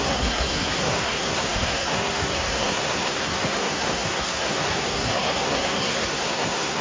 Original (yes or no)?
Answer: no